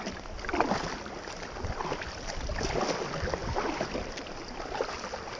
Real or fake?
real